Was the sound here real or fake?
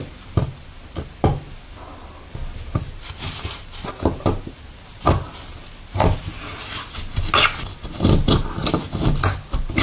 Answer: real